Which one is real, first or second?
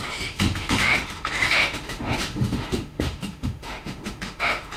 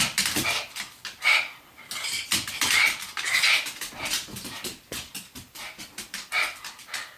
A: second